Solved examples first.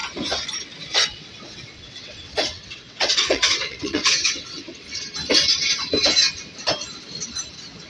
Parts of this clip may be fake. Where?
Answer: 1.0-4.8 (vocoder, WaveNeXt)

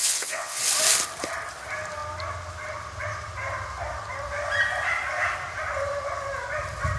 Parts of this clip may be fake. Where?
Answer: 0.0-0.6 (vocoder, WaveNeXt)

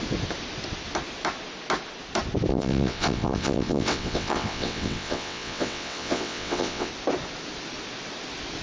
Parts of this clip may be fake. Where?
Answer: 2.5-6.9 (vocoder, WaveNeXt)

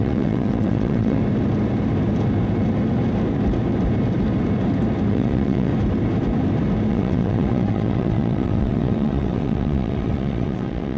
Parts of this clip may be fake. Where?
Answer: 0.0-1.2 (vocoder, WaveNeXt); 5.1-5.7; 6.9-11.0